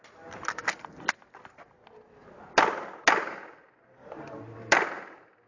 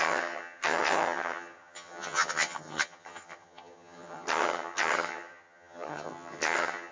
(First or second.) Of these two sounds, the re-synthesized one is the second